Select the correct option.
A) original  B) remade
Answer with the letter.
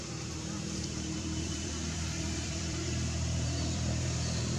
B